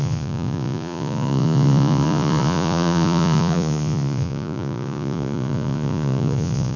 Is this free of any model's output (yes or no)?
no